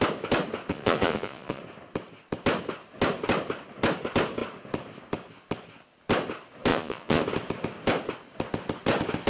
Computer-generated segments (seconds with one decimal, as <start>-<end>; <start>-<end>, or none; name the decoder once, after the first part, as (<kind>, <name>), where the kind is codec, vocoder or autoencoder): 0.7-1.6 (vocoder, Vocos); 6.7-7.2